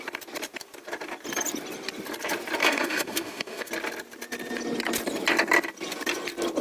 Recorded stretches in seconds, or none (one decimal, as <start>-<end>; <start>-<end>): 0.0-2.6; 3.7-6.6